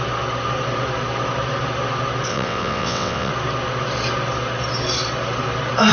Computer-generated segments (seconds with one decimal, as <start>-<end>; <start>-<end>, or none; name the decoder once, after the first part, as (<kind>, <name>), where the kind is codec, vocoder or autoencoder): 2.3-3.3 (vocoder, WaveNeXt)